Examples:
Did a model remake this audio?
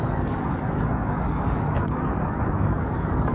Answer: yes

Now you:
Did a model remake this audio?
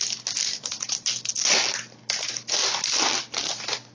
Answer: no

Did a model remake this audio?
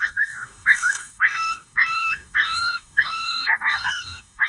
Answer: yes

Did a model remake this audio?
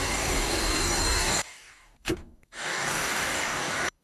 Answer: yes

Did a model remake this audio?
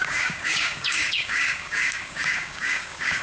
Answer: yes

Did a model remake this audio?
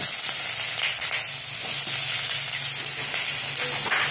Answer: no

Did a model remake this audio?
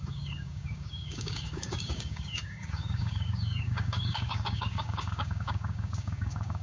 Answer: yes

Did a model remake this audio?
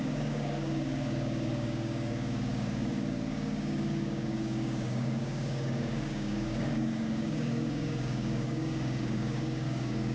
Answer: yes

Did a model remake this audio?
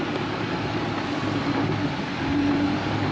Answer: no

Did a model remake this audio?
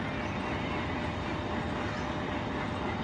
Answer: no